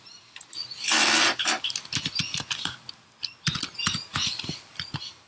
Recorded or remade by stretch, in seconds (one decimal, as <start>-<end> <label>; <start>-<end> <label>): 0.0-4.1 recorded; 4.1-4.6 remade; 4.6-5.3 recorded